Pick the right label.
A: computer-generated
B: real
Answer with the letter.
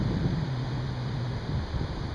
B